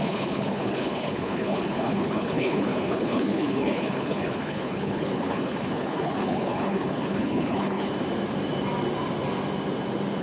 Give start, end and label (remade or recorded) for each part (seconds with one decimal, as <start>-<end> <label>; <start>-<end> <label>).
0.0-7.9 remade; 7.9-10.2 recorded

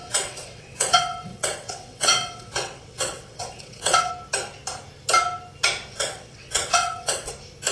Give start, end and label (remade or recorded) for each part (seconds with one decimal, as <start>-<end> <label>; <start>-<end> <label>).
0.0-4.1 remade; 4.1-5.9 recorded; 5.9-7.3 remade; 7.3-7.7 recorded